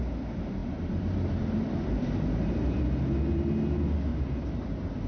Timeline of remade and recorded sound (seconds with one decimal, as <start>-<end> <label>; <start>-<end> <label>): 0.0-0.6 recorded; 0.6-2.8 remade; 2.8-4.1 recorded; 4.1-5.1 remade